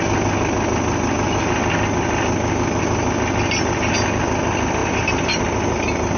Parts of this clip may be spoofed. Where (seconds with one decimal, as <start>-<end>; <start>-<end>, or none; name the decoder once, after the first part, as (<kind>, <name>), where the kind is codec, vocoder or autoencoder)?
none